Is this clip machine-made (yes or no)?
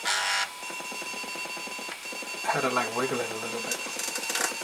no